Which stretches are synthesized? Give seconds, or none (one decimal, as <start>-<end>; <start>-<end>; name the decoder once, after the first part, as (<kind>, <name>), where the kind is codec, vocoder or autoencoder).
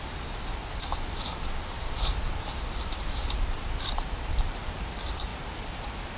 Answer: 0.0-0.6 (vocoder, BigVGAN v2); 4.3-5.3